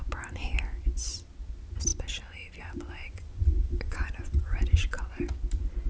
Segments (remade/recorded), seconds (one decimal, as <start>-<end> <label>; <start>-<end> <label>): 0.0-3.0 recorded; 3.0-5.0 remade; 5.0-5.9 recorded